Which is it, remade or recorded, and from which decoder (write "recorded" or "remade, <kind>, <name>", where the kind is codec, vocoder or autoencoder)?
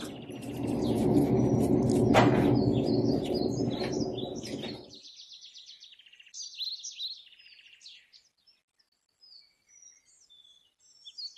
recorded